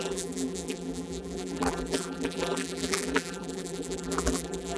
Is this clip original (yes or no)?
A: no